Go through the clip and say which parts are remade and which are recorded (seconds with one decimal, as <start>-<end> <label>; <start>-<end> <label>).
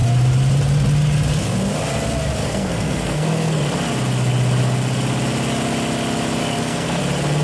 0.0-2.4 recorded; 2.4-3.6 remade; 3.6-6.4 recorded; 6.4-7.0 remade; 7.0-7.4 recorded